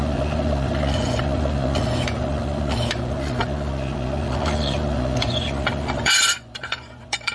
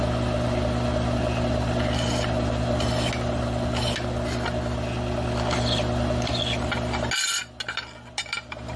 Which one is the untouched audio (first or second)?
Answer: second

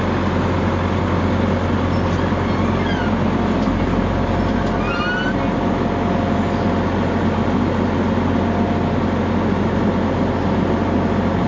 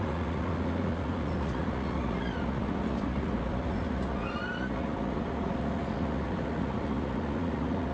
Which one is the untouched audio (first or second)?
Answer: first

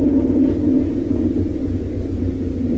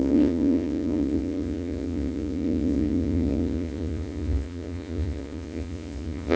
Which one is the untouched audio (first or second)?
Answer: first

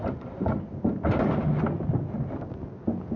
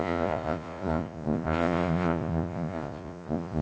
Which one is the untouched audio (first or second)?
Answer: first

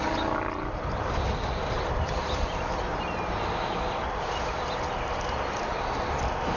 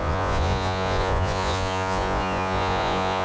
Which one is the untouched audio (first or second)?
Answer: first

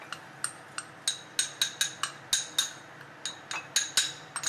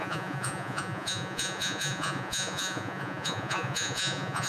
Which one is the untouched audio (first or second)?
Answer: first